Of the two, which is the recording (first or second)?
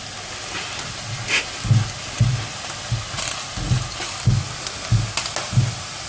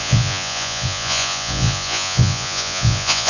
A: first